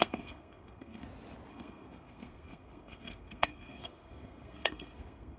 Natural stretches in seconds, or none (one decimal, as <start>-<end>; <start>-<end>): 1.0-1.5